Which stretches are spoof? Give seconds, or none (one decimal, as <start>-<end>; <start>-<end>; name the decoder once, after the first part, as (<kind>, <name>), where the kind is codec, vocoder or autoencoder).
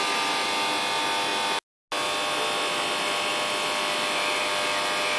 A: none